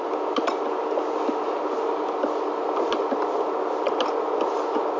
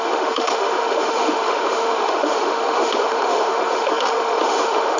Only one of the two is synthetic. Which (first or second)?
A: second